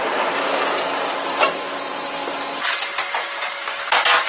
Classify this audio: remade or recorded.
recorded